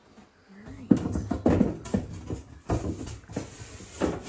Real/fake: real